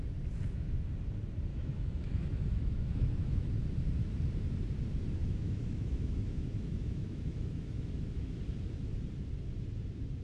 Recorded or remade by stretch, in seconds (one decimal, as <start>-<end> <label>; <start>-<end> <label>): 0.0-1.5 recorded; 1.5-3.5 remade; 3.5-5.2 recorded; 5.2-8.4 remade; 8.4-10.2 recorded